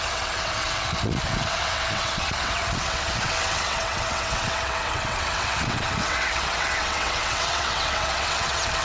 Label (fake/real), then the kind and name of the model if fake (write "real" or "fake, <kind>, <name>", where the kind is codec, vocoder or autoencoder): fake, vocoder, WaveNeXt